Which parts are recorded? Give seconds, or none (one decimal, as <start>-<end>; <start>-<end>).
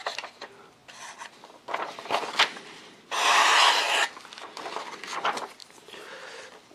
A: 0.0-2.5; 3.7-5.6; 6.3-6.7